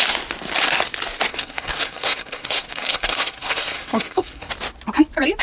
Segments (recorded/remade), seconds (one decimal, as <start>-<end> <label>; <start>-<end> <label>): 0.0-1.3 recorded; 1.3-4.5 remade; 4.5-5.4 recorded